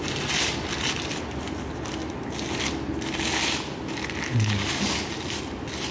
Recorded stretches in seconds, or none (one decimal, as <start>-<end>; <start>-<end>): 0.0-5.9